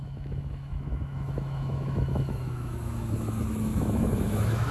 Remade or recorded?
remade